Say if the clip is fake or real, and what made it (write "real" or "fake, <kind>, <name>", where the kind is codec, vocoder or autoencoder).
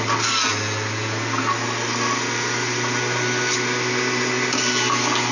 real